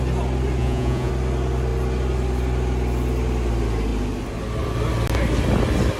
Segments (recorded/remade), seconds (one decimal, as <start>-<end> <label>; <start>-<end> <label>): 0.0-0.6 recorded; 0.6-1.1 remade; 1.1-6.0 recorded